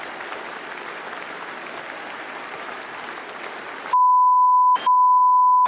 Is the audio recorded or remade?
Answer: recorded